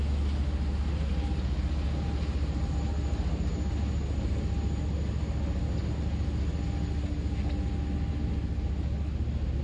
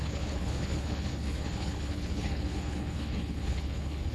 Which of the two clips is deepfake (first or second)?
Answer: second